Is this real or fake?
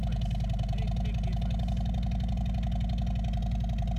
real